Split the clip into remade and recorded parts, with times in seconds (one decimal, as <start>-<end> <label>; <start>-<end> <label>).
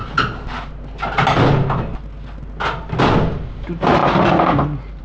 0.0-5.0 recorded